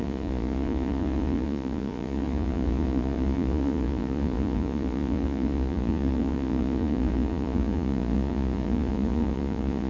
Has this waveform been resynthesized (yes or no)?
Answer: yes